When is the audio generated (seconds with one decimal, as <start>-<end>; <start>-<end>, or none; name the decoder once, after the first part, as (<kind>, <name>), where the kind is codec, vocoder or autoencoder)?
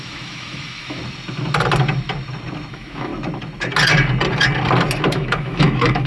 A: 0.0-1.0 (autoencoder, DAC-VAE); 2.7-3.1; 5.1-6.1